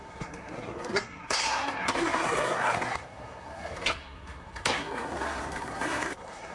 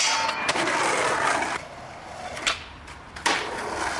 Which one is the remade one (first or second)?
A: first